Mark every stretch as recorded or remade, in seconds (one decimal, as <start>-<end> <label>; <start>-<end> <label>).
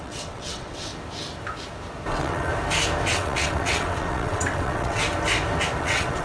0.0-0.9 remade; 0.9-2.1 recorded; 2.1-2.5 remade; 2.5-3.1 recorded; 3.1-5.0 remade; 5.0-5.8 recorded; 5.8-6.2 remade